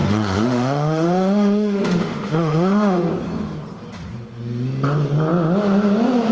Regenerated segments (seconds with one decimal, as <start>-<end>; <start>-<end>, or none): 0.0-3.1